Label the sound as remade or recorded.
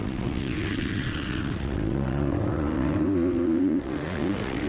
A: remade